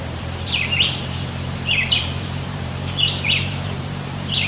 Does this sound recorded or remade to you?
remade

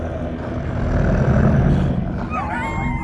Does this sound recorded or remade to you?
recorded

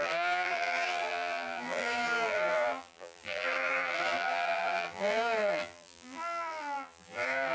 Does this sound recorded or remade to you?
remade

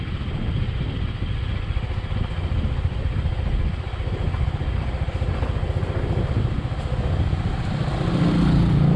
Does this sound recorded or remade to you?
recorded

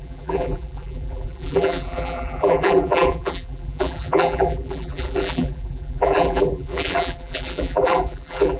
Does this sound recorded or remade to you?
remade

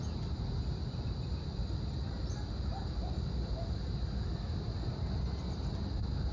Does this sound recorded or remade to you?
recorded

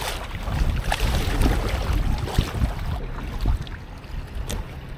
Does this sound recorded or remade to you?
recorded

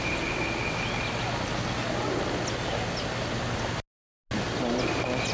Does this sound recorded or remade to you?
recorded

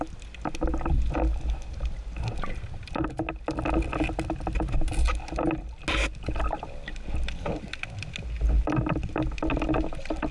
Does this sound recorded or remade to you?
recorded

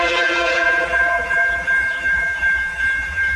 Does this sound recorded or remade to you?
remade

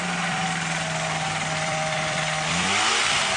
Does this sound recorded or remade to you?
remade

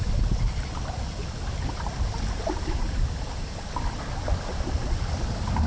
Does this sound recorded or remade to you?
recorded